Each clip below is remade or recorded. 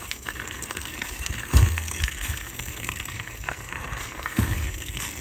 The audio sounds remade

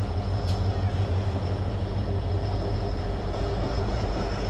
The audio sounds remade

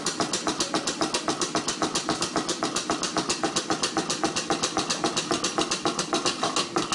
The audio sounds recorded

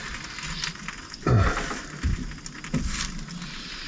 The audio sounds recorded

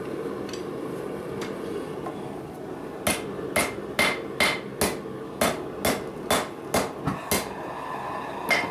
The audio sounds recorded